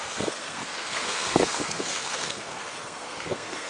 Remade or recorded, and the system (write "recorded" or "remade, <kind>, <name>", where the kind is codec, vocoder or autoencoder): remade, codec, SNAC